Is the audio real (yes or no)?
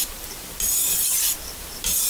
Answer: no